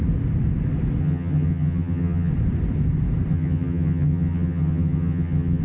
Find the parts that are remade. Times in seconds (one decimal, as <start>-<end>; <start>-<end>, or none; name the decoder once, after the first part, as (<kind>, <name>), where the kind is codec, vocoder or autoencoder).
1.0-2.3 (vocoder, HiFi-GAN); 3.3-5.6

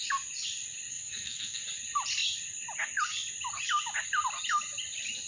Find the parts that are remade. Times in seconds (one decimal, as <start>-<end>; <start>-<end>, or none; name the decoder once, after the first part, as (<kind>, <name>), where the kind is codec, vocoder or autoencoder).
0.9-1.6 (codec, SNAC)

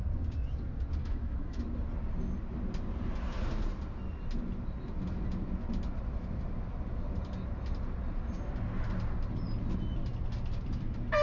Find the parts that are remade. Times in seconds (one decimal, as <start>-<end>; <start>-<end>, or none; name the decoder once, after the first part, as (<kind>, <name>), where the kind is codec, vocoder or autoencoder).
1.0-1.6 (autoencoder, DAC-VAE)

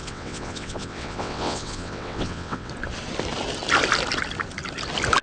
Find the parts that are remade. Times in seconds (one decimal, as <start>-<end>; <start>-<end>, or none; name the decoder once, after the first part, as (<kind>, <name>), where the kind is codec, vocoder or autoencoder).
0.0-2.7 (vocoder, WaveNeXt)

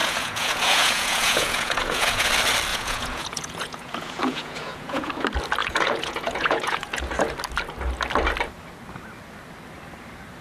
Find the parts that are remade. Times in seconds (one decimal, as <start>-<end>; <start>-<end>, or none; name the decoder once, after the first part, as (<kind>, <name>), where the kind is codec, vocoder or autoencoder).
0.0-2.3 (vocoder, Vocos); 2.7-5.1; 5.6-7.0

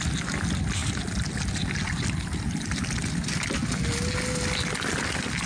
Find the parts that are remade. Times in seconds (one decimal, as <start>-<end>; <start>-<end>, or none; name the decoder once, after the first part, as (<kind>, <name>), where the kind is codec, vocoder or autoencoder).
none

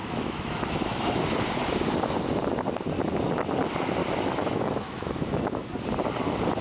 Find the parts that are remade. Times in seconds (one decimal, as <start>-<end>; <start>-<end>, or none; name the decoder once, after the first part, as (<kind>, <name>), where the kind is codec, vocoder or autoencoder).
0.0-1.4 (autoencoder, DAC-VAE); 4.0-5.4